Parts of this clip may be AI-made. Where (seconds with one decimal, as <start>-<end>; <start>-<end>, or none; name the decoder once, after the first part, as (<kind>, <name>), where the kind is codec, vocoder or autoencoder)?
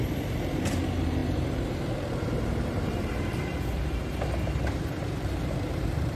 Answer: 0.0-4.0 (vocoder, BigVGAN v2); 5.0-6.1